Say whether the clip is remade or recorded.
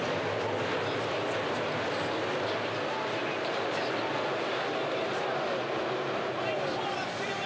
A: recorded